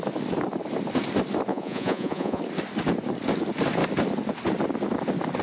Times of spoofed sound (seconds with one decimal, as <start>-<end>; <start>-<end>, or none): 1.5-2.4